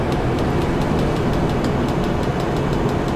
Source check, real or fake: real